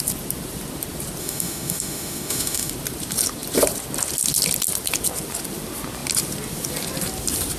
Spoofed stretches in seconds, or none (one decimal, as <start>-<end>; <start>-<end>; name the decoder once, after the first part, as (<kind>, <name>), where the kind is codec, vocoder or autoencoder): 1.2-2.7 (autoencoder, DAC-VAE)